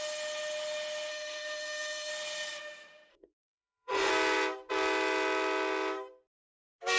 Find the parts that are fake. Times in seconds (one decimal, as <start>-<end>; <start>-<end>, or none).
1.1-2.1; 3.1-4.1